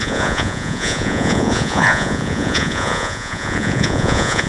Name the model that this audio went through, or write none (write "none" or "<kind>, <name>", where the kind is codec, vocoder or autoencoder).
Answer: vocoder, Vocos